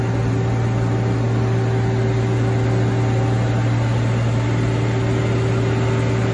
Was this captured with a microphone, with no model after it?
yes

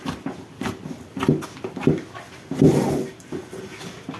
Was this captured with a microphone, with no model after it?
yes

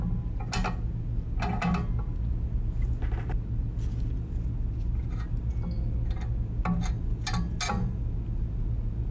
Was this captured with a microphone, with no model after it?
yes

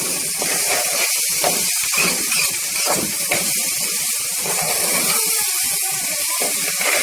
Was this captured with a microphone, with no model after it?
no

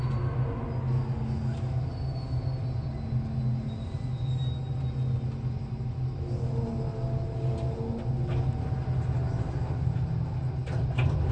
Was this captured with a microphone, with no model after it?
yes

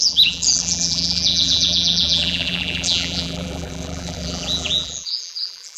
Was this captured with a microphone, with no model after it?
no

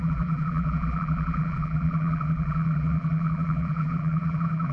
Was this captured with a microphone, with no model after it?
no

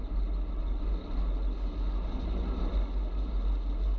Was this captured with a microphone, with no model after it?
yes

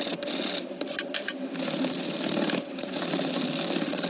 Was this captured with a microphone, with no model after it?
no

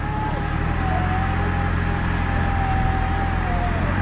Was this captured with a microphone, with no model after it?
yes